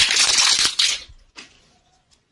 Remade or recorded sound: remade